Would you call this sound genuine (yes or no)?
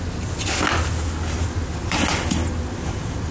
yes